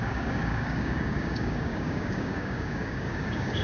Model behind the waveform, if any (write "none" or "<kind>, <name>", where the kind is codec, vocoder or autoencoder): codec, DAC